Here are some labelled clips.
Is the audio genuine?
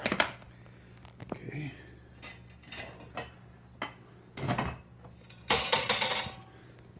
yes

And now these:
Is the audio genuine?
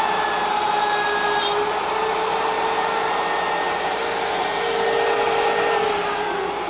no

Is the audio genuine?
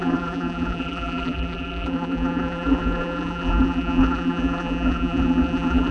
no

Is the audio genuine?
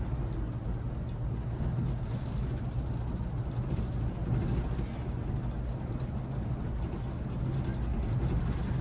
yes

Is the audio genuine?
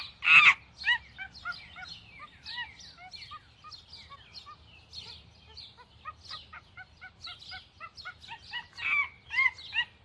yes